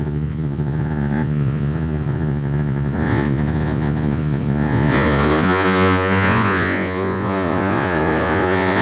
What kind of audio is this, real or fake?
fake